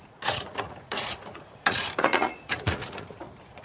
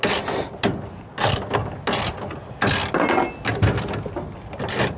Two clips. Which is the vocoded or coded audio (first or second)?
first